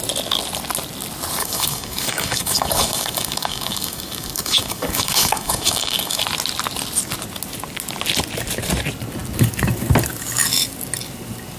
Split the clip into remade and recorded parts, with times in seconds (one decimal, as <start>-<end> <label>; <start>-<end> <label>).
0.0-1.4 recorded; 1.4-6.2 remade; 6.2-11.6 recorded